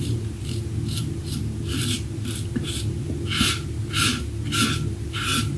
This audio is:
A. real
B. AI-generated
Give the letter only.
B